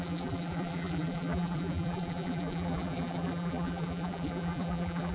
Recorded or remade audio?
remade